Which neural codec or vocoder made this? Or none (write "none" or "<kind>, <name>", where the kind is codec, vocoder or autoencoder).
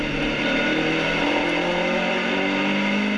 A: none